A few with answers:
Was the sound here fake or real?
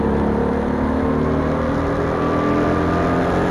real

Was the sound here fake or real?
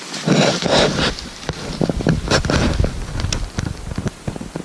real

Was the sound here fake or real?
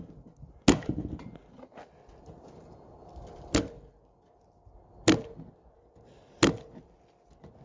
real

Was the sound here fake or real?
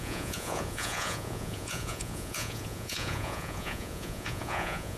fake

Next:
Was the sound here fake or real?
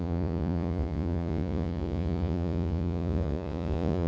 fake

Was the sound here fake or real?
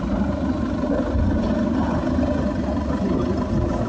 real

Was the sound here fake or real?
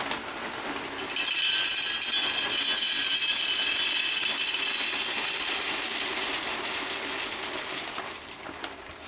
real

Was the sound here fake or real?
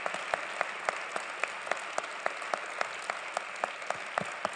real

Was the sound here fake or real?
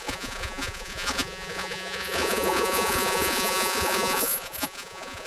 fake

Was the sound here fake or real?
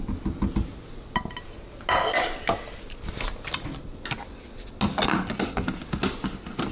real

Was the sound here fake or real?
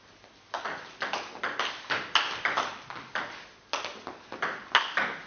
real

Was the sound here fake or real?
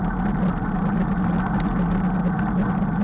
real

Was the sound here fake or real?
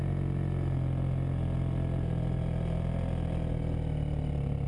real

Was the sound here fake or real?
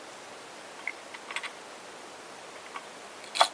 real